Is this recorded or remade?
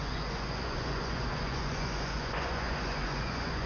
remade